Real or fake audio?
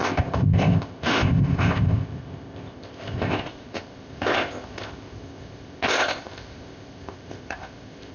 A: fake